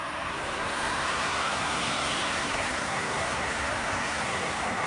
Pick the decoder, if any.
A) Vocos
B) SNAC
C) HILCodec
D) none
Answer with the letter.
B